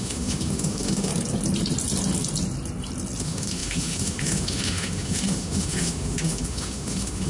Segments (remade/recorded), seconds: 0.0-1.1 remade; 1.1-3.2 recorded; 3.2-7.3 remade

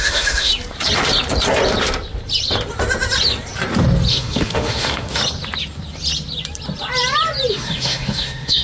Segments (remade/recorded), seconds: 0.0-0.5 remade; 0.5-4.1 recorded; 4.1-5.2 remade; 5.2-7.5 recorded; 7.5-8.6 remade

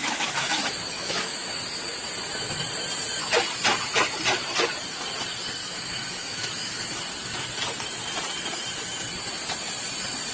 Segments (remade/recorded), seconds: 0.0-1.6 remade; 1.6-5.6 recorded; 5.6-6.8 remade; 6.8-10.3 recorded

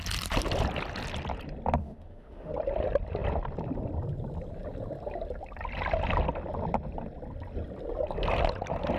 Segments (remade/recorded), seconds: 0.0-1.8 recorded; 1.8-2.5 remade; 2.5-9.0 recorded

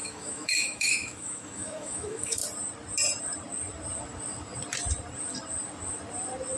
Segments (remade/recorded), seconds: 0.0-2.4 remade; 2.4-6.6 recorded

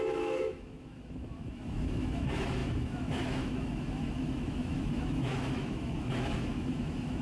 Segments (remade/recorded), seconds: 0.0-7.2 remade